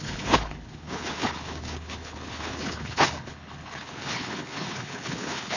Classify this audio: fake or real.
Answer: fake